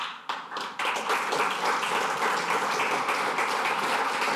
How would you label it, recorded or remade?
remade